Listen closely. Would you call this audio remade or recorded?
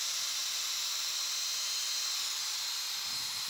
remade